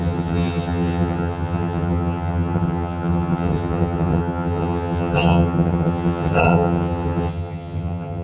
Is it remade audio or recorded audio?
remade